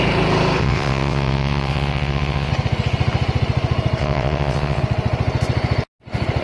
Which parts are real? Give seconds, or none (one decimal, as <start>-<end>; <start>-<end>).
0.0-0.6; 2.5-4.0; 4.8-6.4